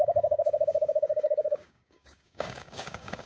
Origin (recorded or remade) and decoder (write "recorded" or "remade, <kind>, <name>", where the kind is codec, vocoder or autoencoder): remade, codec, DAC